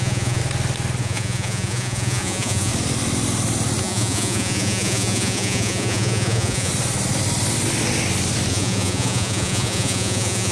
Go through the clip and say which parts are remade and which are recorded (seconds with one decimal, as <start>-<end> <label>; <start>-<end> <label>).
0.0-0.4 remade; 0.4-1.0 recorded; 1.0-2.7 remade; 2.7-3.8 recorded; 3.8-6.7 remade; 6.7-8.5 recorded; 8.5-10.5 remade

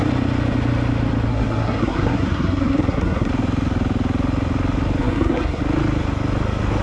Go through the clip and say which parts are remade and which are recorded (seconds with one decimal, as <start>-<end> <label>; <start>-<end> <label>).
0.0-1.3 recorded; 1.3-3.3 remade; 3.3-5.0 recorded; 5.0-5.6 remade; 5.6-6.8 recorded

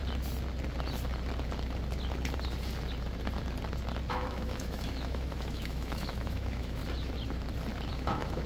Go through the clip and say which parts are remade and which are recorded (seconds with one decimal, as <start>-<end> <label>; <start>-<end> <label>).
0.0-4.1 recorded; 4.1-6.8 remade; 6.8-7.9 recorded; 7.9-8.5 remade